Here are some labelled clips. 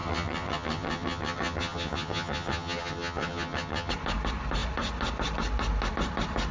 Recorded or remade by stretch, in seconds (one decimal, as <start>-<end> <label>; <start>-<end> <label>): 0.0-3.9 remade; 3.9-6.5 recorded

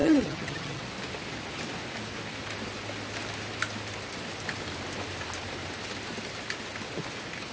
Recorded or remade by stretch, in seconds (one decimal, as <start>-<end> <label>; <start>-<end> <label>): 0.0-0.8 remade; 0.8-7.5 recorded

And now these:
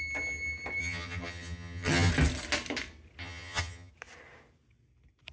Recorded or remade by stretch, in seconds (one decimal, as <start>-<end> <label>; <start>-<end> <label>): 0.0-0.8 recorded; 0.8-2.1 remade; 2.1-3.2 recorded; 3.2-3.9 remade; 3.9-5.3 recorded